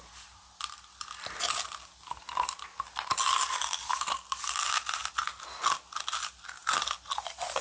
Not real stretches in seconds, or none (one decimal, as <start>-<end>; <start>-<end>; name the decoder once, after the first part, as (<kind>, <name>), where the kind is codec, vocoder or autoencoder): none